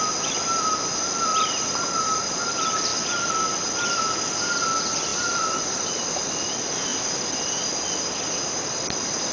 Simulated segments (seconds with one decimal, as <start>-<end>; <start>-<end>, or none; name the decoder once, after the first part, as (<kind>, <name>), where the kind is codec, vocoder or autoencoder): 1.3-2.4 (vocoder, BigVGAN v2); 5.1-6.5